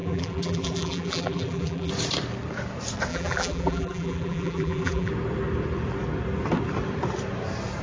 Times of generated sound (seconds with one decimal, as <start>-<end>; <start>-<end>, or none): 0.0-1.9; 3.1-5.1